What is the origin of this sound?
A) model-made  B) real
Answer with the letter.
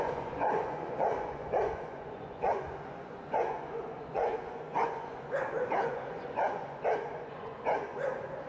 A